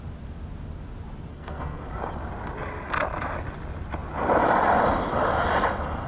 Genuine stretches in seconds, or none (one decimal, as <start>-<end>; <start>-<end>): 0.0-1.3; 1.9-6.1